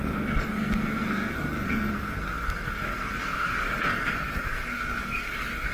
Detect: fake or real fake